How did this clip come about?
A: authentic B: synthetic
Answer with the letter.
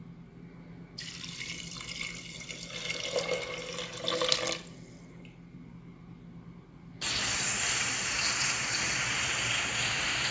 A